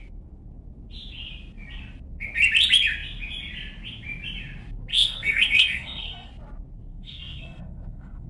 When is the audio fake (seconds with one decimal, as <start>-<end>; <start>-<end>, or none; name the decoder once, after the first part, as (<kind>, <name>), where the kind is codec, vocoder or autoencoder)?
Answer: 4.9-6.3 (codec, SNAC); 6.9-8.3